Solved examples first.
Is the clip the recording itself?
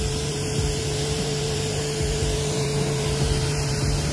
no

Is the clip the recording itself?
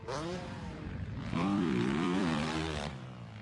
no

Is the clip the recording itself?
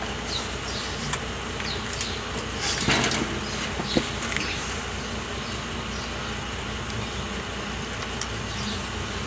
yes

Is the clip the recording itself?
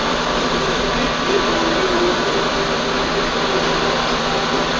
no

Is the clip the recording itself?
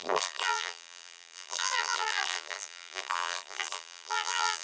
no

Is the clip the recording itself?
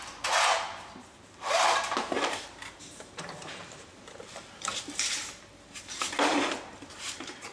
no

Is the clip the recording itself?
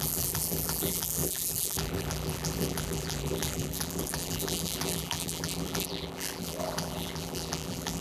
no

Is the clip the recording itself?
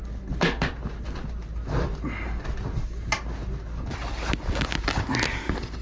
yes